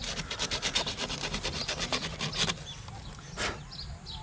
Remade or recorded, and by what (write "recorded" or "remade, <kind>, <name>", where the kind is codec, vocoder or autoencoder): recorded